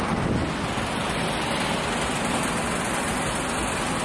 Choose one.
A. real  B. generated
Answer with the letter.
A